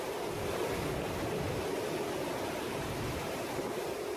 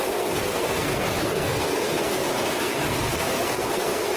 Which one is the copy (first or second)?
second